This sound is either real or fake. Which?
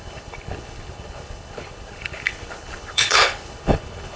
fake